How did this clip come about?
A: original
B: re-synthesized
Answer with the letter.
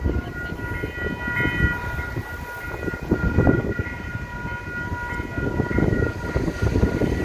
A